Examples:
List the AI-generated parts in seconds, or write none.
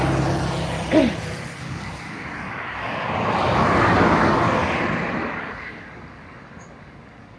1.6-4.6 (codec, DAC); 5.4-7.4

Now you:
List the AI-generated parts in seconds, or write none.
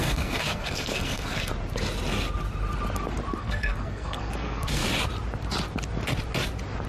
0.0-1.5 (codec, SNAC); 3.4-4.8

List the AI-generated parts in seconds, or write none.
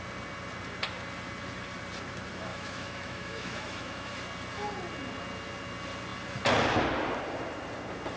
2.5-4.2 (autoencoder, DAC-VAE)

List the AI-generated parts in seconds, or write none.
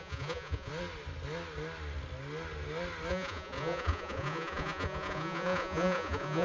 0.0-0.7 (vocoder, Vocos); 3.1-6.4